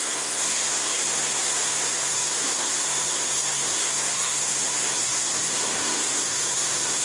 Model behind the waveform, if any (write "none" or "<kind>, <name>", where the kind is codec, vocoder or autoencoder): codec, SNAC